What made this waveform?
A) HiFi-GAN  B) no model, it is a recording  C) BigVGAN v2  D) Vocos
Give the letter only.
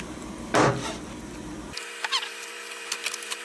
C